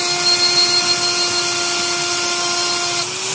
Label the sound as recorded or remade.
recorded